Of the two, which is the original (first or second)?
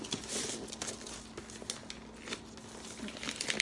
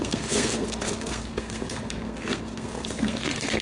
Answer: first